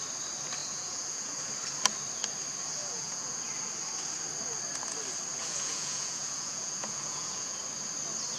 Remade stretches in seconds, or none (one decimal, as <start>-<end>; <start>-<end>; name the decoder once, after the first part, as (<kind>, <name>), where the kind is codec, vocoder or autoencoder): 0.6-1.5 (vocoder, Vocos); 2.8-3.4; 5.4-7.6